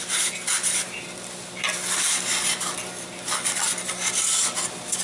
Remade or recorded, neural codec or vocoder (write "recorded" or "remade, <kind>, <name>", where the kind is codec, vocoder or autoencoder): recorded